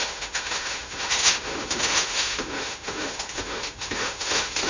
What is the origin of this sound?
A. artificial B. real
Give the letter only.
A